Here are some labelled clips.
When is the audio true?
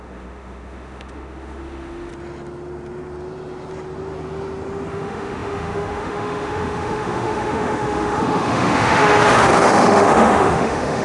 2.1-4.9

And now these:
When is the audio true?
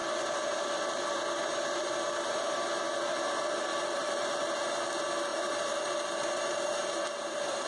0.0-3.7; 4.5-5.3